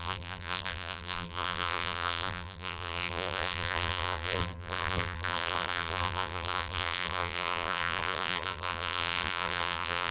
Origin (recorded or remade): remade